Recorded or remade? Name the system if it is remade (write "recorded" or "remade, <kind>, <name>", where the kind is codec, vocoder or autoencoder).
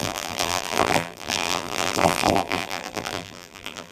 remade, vocoder, BigVGAN v2